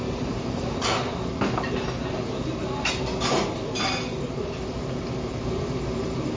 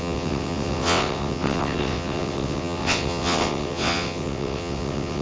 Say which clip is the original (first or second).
first